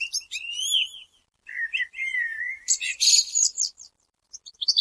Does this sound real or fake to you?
fake